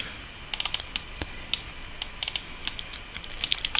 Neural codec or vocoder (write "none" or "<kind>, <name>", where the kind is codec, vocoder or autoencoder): none